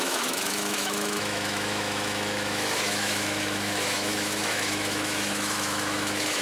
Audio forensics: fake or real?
fake